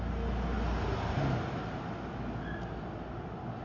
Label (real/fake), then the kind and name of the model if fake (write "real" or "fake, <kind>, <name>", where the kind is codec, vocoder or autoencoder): real